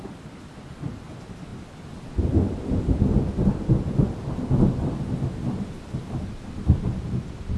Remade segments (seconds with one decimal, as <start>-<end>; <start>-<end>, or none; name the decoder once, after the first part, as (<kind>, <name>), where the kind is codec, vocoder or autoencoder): none